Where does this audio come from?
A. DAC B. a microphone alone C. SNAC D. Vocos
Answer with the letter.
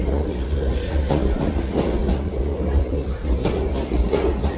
D